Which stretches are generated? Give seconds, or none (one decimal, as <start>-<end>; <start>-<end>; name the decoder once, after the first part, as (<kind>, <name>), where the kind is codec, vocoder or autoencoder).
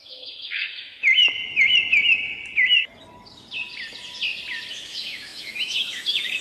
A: 0.0-1.0 (autoencoder, DAC-VAE); 4.7-6.4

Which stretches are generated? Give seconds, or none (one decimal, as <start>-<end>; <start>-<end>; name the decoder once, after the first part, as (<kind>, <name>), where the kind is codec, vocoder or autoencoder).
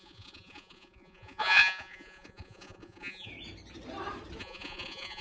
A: 0.0-3.3 (vocoder, Vocos); 4.4-5.2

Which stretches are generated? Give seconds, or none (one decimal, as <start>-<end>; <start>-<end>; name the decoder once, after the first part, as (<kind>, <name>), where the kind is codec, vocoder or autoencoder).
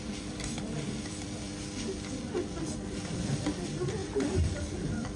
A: 0.0-1.5 (vocoder, BigVGAN v2); 2.4-5.2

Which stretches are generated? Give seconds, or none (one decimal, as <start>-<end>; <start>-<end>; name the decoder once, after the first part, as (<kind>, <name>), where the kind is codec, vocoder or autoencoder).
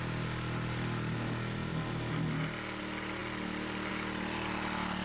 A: none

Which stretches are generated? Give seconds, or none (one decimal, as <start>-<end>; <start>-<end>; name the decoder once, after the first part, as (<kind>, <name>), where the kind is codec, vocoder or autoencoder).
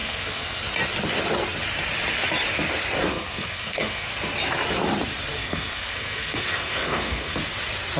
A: 0.0-0.6 (codec, SNAC); 3.1-4.1; 5.4-7.4